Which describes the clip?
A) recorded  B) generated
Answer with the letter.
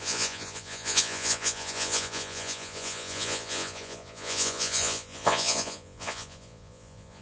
B